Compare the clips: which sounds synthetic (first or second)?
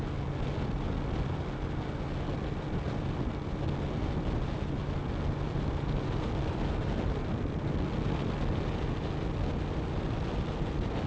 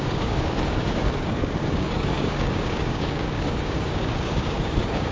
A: second